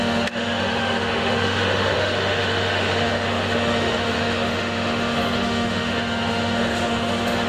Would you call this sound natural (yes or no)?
no